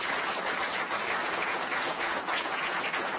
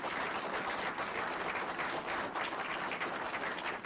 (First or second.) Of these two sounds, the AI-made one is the first